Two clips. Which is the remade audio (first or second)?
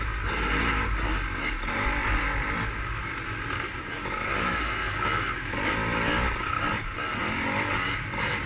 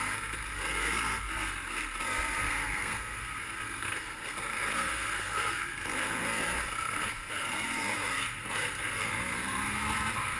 second